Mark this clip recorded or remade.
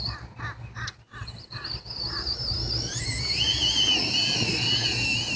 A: recorded